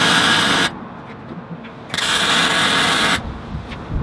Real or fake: real